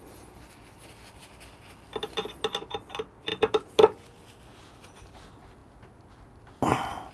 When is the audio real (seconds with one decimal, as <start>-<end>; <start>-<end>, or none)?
0.0-7.1